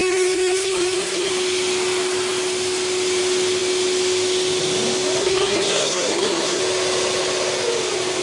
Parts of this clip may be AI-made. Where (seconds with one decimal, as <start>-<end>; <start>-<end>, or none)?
0.0-1.3; 5.2-6.6